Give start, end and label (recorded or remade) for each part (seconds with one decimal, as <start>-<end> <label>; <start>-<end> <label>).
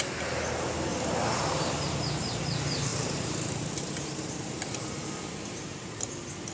0.0-2.9 recorded; 2.9-6.1 remade; 6.1-6.5 recorded